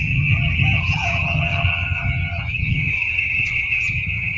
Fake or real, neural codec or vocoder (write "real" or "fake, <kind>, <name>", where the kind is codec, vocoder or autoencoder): fake, vocoder, HiFi-GAN